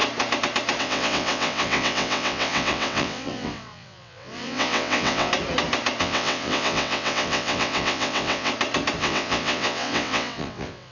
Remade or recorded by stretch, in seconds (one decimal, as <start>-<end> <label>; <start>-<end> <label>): 0.0-0.8 recorded; 0.8-5.3 remade; 5.3-6.0 recorded; 6.0-8.5 remade; 8.5-9.0 recorded; 9.0-10.9 remade